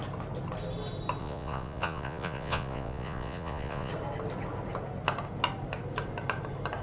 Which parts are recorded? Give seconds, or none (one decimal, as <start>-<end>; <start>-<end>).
0.0-1.2; 3.9-6.8